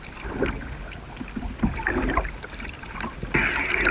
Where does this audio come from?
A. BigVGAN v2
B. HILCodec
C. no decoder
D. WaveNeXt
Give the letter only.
C